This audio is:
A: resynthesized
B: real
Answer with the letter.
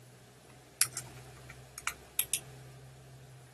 B